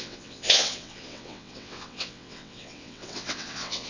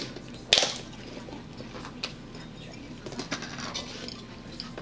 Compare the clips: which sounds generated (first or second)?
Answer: first